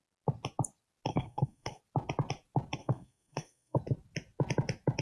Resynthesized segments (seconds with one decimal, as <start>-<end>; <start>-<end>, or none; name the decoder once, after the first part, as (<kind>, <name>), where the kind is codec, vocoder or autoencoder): 1.1-1.8 (codec, SNAC); 2.8-3.8